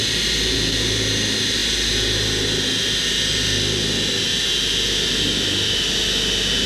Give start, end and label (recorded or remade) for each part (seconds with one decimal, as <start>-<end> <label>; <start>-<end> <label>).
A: 0.0-6.7 recorded